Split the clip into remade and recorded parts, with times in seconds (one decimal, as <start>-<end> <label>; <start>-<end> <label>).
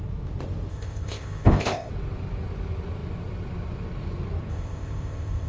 0.0-0.7 recorded; 0.7-1.9 remade; 1.9-4.5 recorded; 4.5-5.5 remade